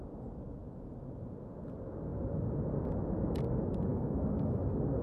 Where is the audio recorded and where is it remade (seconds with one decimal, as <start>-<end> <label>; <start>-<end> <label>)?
0.0-3.9 recorded; 3.9-4.6 remade; 4.6-5.0 recorded